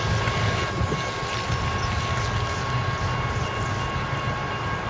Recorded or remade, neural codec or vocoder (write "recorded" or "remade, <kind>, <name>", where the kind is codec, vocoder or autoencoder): recorded